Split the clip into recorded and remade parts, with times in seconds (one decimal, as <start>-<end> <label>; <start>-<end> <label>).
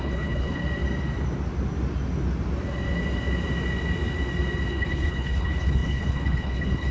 0.0-0.6 remade; 0.6-4.7 recorded; 4.7-6.9 remade